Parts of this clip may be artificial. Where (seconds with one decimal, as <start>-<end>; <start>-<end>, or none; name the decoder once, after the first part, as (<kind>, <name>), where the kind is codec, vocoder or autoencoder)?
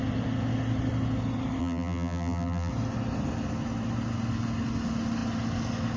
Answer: 1.6-2.7 (vocoder, BigVGAN v2)